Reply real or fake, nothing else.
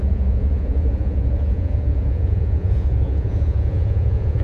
fake